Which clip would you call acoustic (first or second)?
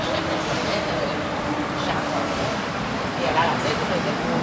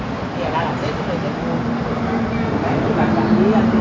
second